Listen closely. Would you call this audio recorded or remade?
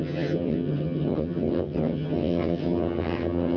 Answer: remade